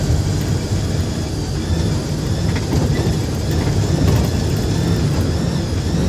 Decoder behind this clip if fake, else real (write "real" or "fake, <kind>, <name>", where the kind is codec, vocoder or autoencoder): real